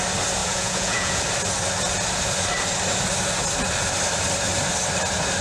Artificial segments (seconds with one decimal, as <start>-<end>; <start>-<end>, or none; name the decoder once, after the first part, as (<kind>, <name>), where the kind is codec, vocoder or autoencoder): 0.4-1.2 (vocoder, Vocos)